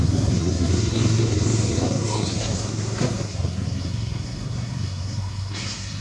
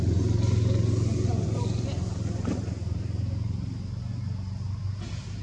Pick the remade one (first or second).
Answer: first